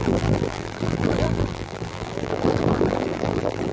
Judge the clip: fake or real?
fake